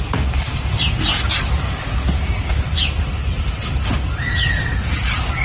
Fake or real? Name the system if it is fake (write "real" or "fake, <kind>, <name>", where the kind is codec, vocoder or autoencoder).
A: real